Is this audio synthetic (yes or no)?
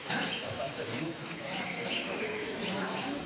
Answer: yes